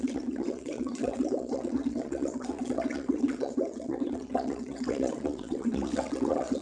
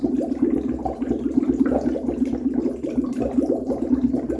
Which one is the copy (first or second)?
first